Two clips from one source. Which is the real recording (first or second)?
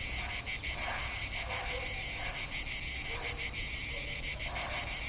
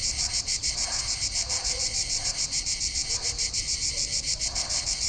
first